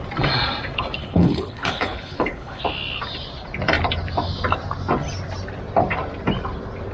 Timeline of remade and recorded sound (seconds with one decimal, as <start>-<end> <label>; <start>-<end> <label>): 0.0-1.0 recorded; 1.0-2.6 remade; 2.6-6.9 recorded